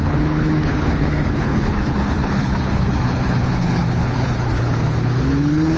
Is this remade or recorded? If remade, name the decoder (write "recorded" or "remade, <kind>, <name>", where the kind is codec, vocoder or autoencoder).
remade, codec, HILCodec